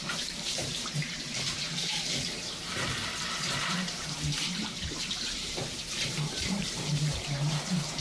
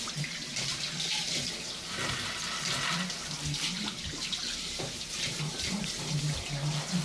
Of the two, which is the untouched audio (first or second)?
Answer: second